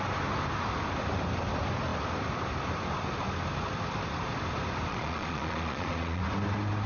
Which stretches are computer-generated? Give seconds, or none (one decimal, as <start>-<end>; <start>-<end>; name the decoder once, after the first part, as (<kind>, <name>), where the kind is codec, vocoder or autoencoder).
4.9-6.2 (vocoder, Vocos)